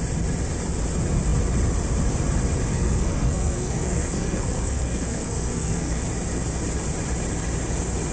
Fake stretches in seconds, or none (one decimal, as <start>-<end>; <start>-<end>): 2.7-6.0